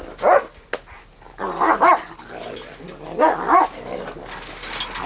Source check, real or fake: real